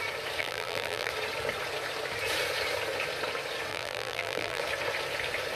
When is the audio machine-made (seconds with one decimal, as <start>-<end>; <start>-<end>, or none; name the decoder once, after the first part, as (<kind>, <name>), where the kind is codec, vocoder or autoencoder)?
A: 0.4-1.1 (vocoder, BigVGAN v2); 3.7-4.6